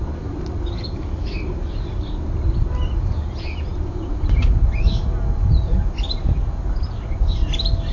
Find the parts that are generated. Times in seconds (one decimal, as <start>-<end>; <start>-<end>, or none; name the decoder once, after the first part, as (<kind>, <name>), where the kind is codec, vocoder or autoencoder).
none